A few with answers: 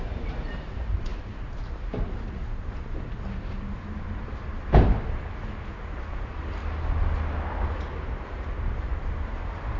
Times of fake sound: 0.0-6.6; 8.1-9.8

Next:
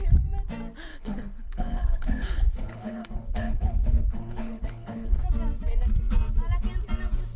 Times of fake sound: 0.9-5.2

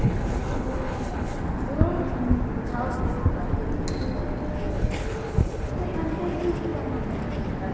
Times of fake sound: 0.0-1.4; 4.7-5.7

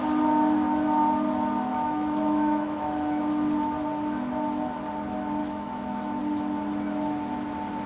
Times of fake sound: 1.7-3.2; 5.4-6.2

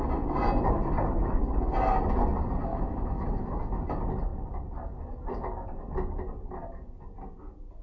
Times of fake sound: 2.7-3.6

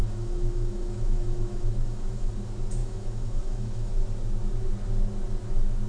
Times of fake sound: 0.0-2.3; 2.8-3.9

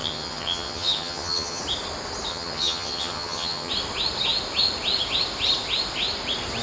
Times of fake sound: 0.0-1.6; 2.3-3.7